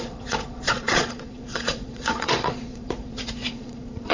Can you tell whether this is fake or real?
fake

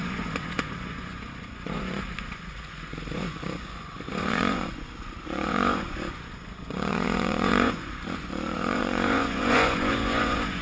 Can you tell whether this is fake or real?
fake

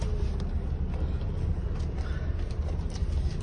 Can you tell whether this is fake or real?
real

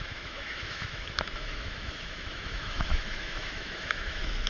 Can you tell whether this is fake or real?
fake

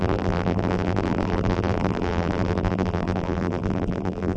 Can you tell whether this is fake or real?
fake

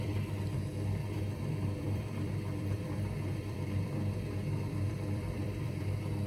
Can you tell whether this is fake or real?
fake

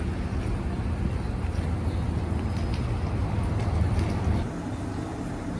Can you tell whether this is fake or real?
real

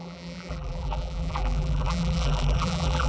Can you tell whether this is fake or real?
fake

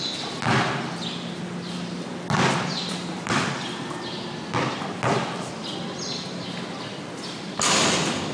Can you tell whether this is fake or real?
real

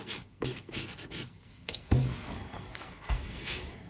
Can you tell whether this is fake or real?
fake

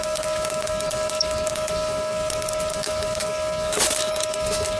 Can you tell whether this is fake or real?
fake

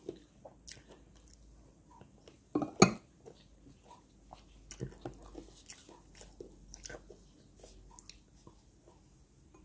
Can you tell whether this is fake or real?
real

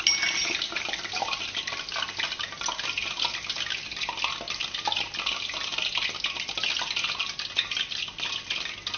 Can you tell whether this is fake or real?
real